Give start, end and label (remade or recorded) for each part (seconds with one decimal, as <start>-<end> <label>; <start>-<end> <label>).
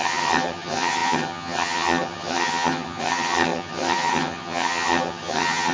0.0-5.7 remade